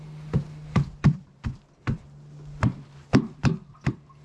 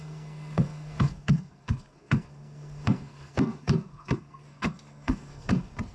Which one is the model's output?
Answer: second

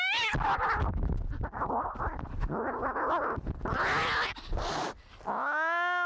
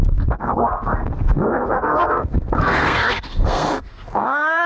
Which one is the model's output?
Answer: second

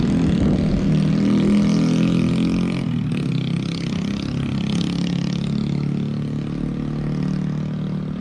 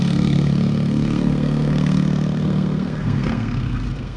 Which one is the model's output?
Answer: second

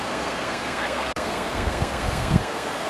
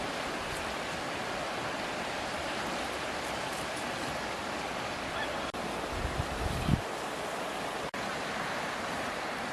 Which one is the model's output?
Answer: first